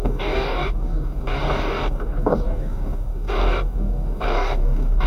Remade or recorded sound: remade